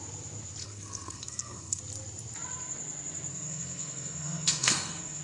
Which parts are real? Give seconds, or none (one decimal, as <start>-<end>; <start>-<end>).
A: 0.0-0.6; 1.8-3.3